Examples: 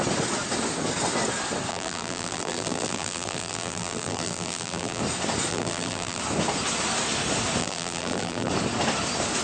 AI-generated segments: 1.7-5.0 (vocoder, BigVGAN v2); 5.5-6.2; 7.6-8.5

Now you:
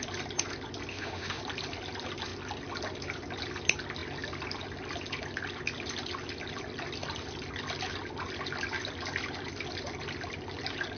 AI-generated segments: 0.9-1.4 (autoencoder, DAC-VAE)

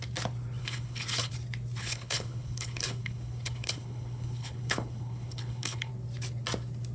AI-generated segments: 0.6-1.3 (codec, HILCodec); 1.8-5.9

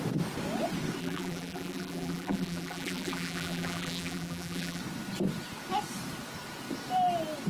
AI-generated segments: 1.0-4.8 (vocoder, BigVGAN v2)

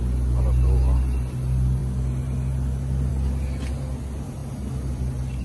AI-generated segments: none